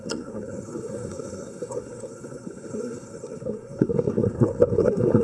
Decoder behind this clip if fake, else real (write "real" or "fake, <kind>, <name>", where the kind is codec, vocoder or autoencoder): fake, codec, SNAC